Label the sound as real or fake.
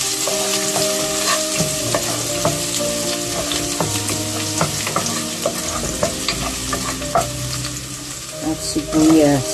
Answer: real